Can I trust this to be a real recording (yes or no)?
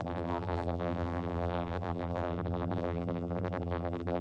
no